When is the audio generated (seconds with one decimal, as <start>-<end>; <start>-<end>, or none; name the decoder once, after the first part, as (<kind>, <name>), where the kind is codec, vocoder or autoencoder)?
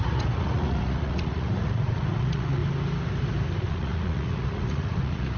0.0-2.6 (vocoder, Vocos); 3.6-5.4